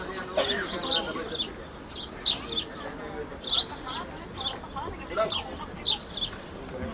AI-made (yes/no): no